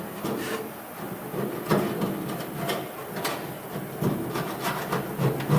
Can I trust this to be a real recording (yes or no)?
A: yes